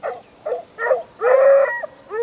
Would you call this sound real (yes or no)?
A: yes